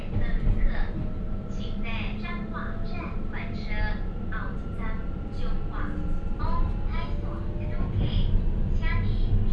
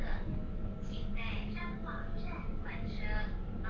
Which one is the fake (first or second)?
second